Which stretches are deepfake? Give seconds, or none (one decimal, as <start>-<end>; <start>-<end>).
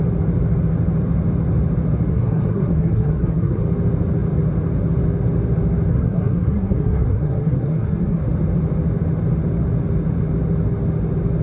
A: 2.1-3.6; 5.9-8.2